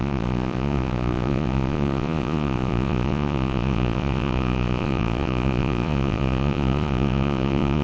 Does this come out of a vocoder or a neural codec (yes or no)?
yes